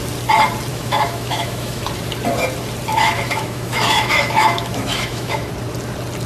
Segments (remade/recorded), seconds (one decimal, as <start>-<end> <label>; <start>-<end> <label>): 0.0-0.7 recorded; 0.7-1.9 remade; 1.9-2.9 recorded; 2.9-5.5 remade; 5.5-6.3 recorded